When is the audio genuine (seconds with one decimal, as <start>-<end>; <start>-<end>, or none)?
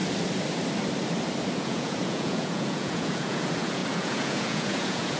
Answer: 0.0-1.6